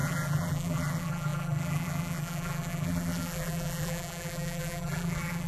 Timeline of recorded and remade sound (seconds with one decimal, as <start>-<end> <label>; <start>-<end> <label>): 0.0-5.5 remade